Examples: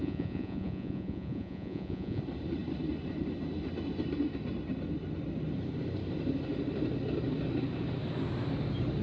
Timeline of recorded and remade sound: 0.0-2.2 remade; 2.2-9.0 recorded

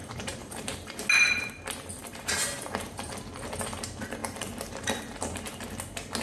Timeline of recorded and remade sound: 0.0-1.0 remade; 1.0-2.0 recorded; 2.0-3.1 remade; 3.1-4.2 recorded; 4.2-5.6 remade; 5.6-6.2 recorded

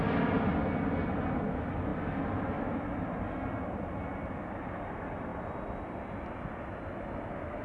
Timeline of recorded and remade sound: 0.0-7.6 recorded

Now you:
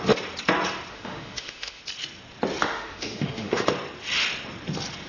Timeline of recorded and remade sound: 0.0-0.9 recorded; 0.9-1.8 remade; 1.8-2.6 recorded; 2.6-3.7 remade; 3.7-5.1 recorded

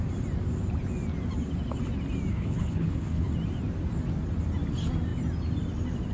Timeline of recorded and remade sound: 0.0-2.3 recorded; 2.3-3.3 remade; 3.3-6.1 recorded

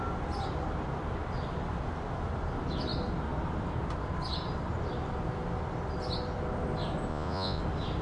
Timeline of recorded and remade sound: 0.0-7.1 recorded; 7.1-7.6 remade; 7.6-8.0 recorded

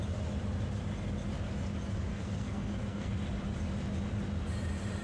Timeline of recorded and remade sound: 0.0-2.1 recorded; 2.1-3.1 remade; 3.1-5.0 recorded